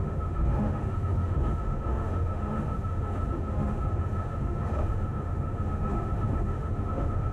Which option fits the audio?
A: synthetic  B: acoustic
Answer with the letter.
A